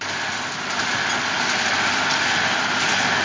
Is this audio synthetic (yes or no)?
no